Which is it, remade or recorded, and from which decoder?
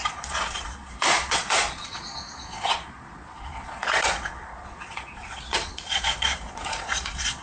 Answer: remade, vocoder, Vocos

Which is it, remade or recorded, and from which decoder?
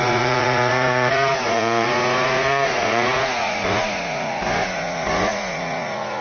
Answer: remade, vocoder, Vocos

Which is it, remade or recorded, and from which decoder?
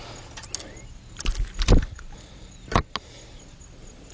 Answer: recorded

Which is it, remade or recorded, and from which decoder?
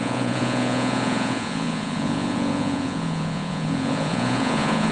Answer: remade, vocoder, Vocos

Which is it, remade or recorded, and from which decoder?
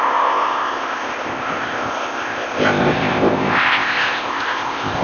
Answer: remade, codec, ZipCodec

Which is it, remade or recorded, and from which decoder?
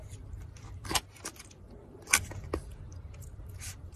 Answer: recorded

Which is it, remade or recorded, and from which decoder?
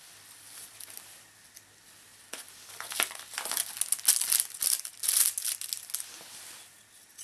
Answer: recorded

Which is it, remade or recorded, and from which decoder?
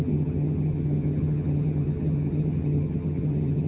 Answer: remade, vocoder, HiFi-GAN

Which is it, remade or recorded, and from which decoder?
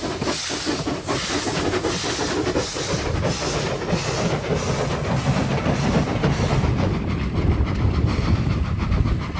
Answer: recorded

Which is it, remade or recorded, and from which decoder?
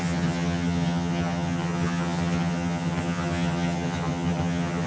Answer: remade, vocoder, HiFi-GAN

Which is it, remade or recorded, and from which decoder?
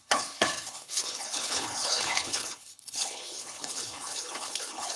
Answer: remade, codec, HILCodec